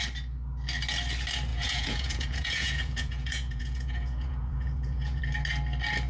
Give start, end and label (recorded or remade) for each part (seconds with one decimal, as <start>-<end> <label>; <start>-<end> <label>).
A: 0.0-1.5 recorded; 1.5-5.2 remade; 5.2-6.1 recorded